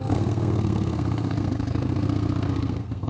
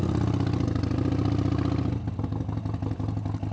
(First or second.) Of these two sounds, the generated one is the first